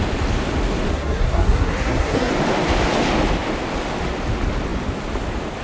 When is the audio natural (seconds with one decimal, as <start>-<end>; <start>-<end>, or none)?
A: 0.0-0.9; 2.3-5.6